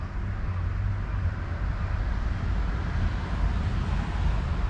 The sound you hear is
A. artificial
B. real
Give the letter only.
B